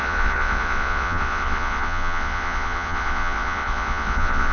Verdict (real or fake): fake